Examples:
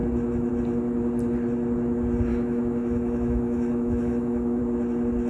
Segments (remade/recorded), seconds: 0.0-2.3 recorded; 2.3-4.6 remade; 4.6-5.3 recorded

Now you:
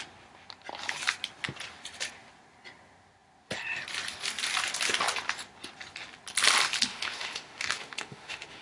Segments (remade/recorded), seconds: 0.0-6.9 recorded; 6.9-8.6 remade

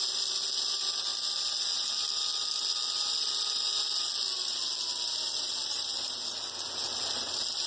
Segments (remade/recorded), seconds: 0.0-7.7 recorded

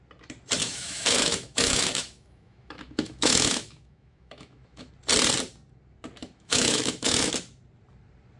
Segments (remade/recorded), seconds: 0.0-0.6 recorded; 0.6-4.9 remade; 4.9-6.2 recorded; 6.2-7.3 remade; 7.3-8.4 recorded

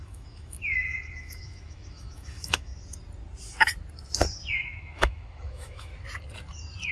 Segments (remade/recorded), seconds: 0.0-2.7 remade; 2.7-4.5 recorded; 4.5-5.9 remade; 5.9-6.9 recorded

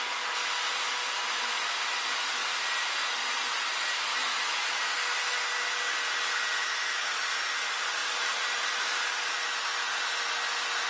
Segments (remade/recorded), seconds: 0.0-4.1 recorded; 4.1-4.8 remade; 4.8-6.6 recorded; 6.6-7.2 remade; 7.2-10.9 recorded

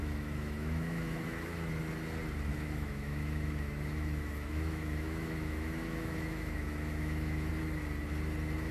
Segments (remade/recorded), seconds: 0.0-1.7 remade; 1.7-2.5 recorded; 2.5-7.5 remade; 7.5-8.7 recorded

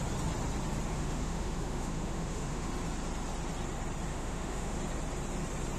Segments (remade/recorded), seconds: 0.0-0.9 recorded; 0.9-2.7 remade; 2.7-4.1 recorded; 4.1-4.8 remade; 4.8-5.8 recorded